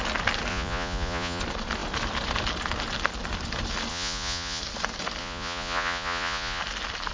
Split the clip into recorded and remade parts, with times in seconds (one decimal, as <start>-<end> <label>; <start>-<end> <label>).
0.0-0.5 recorded; 0.5-1.4 remade; 1.4-3.9 recorded; 3.9-4.6 remade; 4.6-5.2 recorded; 5.2-6.6 remade; 6.6-7.1 recorded